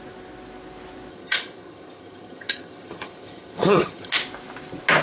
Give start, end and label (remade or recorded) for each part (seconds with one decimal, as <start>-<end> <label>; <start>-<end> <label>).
0.0-1.1 recorded; 1.1-4.1 remade; 4.1-5.0 recorded